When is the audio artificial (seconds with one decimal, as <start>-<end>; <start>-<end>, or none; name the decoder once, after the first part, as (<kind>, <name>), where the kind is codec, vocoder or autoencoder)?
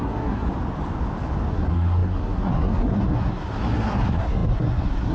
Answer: 0.0-0.5 (codec, SNAC); 1.5-5.1